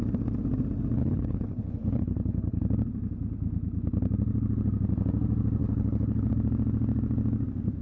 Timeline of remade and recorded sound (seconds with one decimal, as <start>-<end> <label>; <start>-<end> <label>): 0.0-1.0 recorded; 1.0-2.6 remade; 2.6-5.6 recorded; 5.6-6.3 remade; 6.3-7.8 recorded